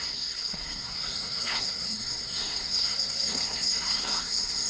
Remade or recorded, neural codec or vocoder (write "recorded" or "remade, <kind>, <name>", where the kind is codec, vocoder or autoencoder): remade, codec, SNAC